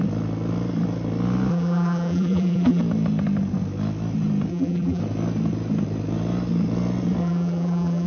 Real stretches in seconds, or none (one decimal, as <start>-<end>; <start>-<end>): 0.0-1.5; 2.8-4.5; 5.0-7.2